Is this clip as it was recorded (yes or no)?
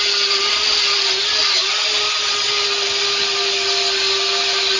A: yes